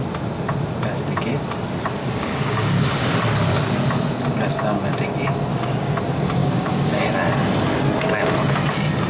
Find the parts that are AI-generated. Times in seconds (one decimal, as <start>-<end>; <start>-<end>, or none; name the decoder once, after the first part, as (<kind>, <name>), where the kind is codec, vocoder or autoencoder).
2.0-3.1 (codec, DAC); 5.5-6.0; 6.4-7.0